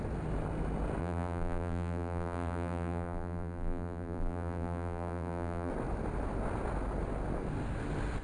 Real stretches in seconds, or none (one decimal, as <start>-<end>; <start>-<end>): 0.0-1.0; 5.7-8.2